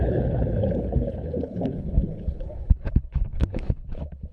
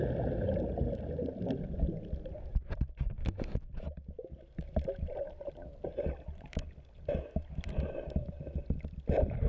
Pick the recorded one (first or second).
second